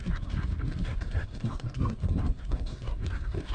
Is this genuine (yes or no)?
no